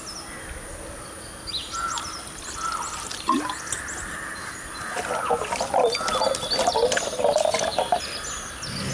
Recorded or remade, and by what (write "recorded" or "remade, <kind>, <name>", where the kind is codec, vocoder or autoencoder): recorded